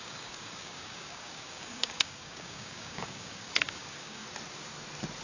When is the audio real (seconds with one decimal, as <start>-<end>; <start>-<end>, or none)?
4.2-5.2